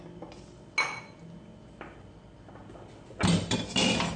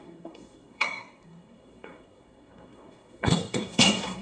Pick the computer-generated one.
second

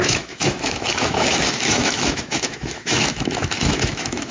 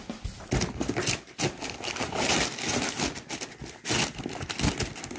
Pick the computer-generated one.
first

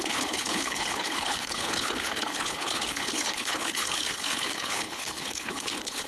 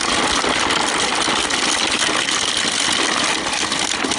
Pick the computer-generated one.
first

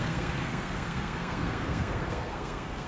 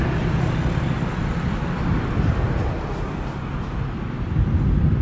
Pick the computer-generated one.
first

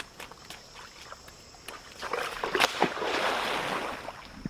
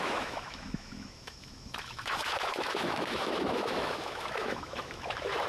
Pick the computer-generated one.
second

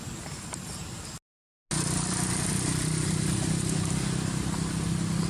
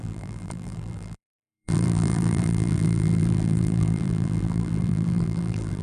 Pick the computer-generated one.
second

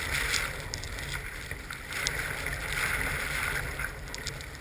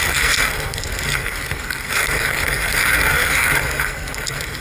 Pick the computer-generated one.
second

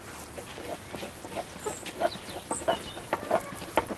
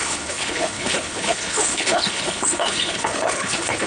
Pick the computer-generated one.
second